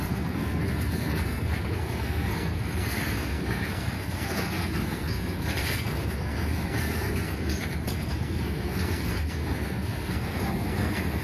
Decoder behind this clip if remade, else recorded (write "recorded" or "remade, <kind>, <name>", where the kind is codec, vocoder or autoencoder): remade, codec, SNAC